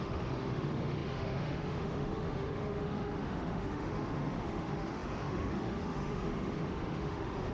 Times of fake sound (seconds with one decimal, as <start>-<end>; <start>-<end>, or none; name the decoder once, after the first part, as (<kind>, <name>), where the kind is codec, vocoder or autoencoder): 0.0-7.5 (autoencoder, DAC-VAE)